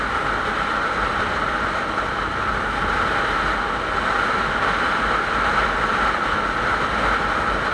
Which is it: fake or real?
real